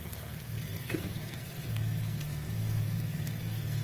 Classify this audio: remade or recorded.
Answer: remade